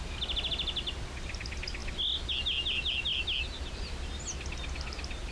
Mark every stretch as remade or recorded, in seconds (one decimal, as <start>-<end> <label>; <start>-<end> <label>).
0.0-5.3 recorded